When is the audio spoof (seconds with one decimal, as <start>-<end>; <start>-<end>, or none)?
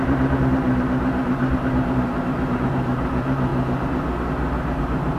0.0-3.5; 4.8-5.2